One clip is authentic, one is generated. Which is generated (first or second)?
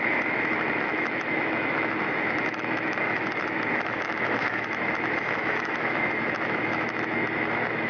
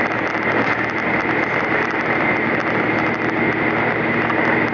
first